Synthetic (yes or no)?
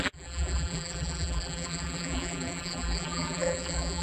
yes